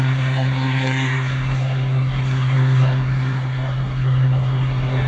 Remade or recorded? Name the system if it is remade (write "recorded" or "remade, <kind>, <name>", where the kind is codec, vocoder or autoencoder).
remade, codec, SNAC